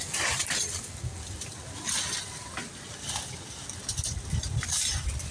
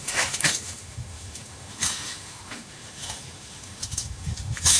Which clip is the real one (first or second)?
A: first